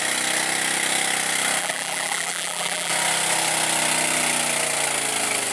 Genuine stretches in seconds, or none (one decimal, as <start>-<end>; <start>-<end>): 0.0-1.6; 2.9-5.5